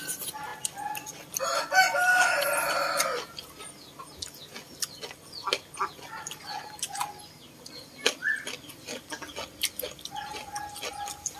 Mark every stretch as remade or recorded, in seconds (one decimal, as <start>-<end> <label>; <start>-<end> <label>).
0.0-11.4 recorded